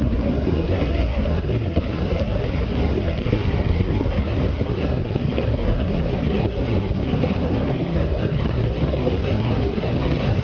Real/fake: fake